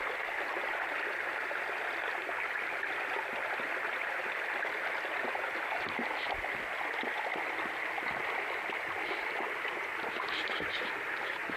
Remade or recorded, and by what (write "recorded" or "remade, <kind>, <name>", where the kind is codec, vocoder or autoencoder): recorded